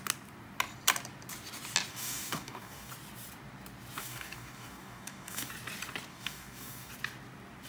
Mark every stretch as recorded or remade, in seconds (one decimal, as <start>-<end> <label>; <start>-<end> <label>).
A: 0.0-1.9 recorded; 1.9-2.9 remade; 2.9-4.0 recorded; 4.0-5.5 remade; 5.5-6.1 recorded; 6.1-6.9 remade; 6.9-7.7 recorded